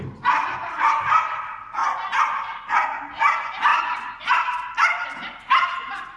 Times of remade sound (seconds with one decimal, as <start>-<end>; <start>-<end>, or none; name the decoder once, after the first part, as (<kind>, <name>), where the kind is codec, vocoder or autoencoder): 3.7-5.7 (vocoder, BigVGAN v2)